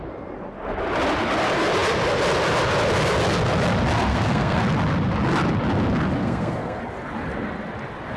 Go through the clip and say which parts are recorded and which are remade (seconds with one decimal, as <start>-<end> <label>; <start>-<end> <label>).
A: 0.0-4.1 recorded; 4.1-4.6 remade; 4.6-6.2 recorded; 6.2-6.8 remade; 6.8-8.2 recorded